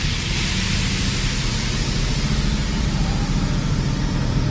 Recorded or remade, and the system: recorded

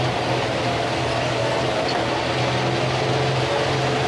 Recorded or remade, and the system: recorded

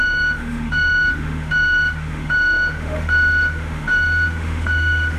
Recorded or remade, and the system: remade, autoencoder, DAC-VAE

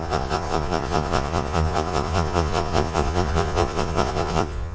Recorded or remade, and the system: remade, vocoder, Vocos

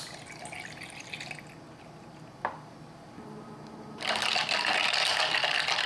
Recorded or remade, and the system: recorded